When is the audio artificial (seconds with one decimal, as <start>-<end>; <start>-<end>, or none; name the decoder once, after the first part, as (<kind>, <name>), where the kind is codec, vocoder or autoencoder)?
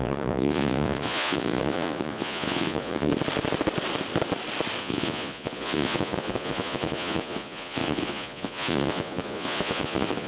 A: 0.0-3.1 (vocoder, Vocos); 4.8-10.3